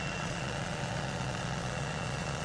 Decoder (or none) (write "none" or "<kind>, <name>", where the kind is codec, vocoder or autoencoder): vocoder, Vocos